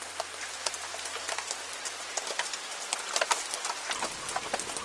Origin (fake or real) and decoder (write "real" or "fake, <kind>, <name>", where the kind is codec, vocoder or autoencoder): real